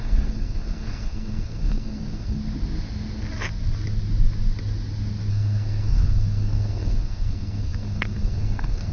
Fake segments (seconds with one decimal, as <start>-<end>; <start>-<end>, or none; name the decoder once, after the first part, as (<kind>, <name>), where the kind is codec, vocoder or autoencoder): 0.0-2.4 (codec, SNAC); 5.3-8.9